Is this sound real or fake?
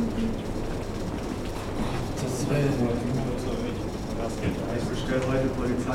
real